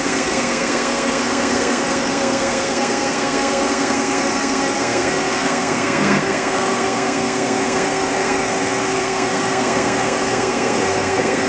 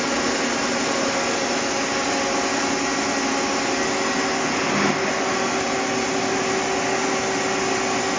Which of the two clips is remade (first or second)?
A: first